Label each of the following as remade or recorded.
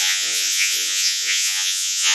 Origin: remade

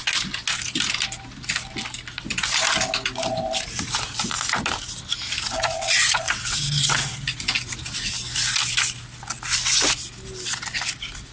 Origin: recorded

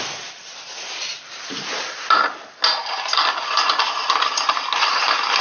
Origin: recorded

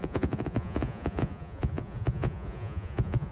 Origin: remade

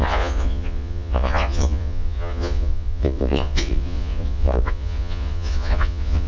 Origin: remade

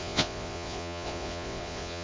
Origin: remade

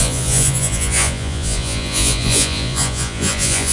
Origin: remade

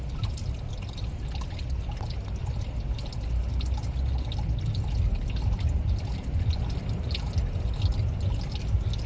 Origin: recorded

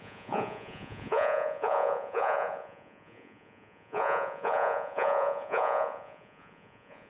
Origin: remade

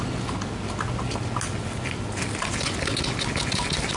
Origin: recorded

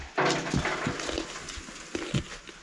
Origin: recorded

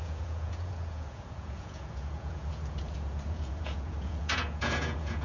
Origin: remade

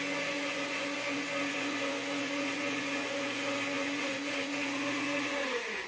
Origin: remade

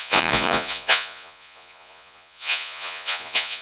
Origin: remade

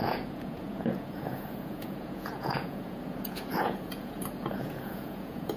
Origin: remade